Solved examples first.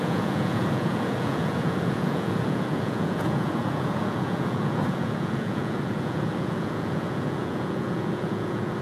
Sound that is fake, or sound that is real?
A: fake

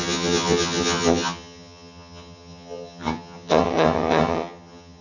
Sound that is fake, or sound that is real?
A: fake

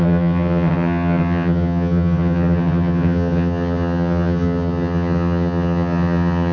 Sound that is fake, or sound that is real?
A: fake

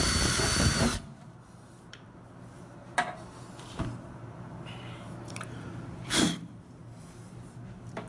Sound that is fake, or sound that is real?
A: fake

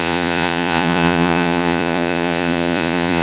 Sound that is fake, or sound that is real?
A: fake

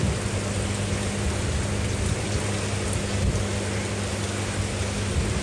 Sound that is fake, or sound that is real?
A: real